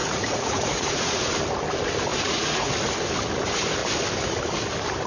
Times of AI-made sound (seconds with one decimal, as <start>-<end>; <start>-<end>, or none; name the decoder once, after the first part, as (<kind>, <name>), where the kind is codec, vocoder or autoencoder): 0.0-1.3 (vocoder, Vocos); 2.1-2.7